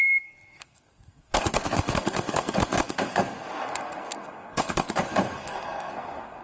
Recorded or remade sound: remade